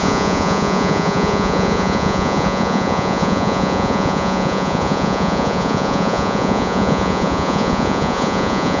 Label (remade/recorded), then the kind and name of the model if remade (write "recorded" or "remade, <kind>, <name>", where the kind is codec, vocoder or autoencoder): remade, vocoder, Vocos